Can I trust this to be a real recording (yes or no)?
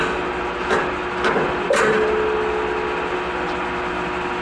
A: yes